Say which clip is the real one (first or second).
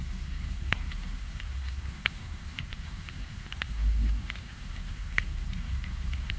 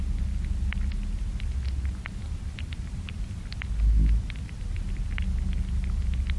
second